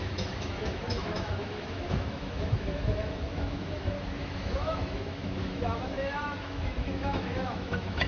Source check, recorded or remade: remade